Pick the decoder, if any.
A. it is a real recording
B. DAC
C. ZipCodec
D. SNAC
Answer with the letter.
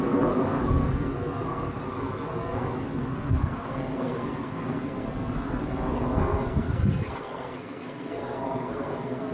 D